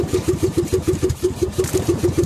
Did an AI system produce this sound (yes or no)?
yes